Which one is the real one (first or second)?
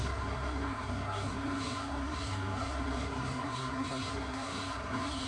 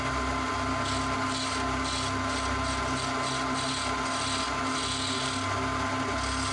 second